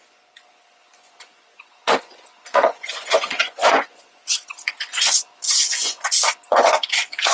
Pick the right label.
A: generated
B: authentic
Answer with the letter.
A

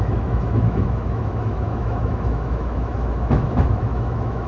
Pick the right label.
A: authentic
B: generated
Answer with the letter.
B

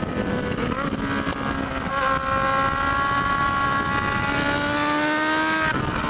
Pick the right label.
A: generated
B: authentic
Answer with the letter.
B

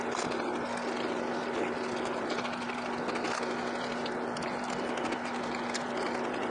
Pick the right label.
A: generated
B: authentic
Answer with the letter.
B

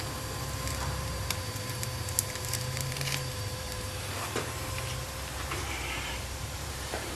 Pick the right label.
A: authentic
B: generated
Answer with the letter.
B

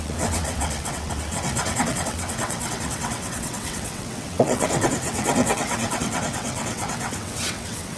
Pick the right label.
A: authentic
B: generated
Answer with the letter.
B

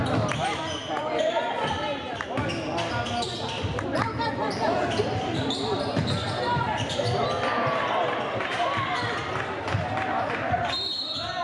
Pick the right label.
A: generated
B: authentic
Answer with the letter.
B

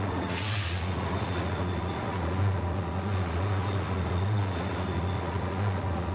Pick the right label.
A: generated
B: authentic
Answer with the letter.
A